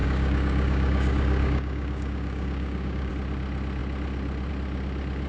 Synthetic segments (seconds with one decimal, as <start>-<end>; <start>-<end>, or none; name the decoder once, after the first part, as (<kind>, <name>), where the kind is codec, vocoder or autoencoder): 0.0-3.1 (codec, DAC)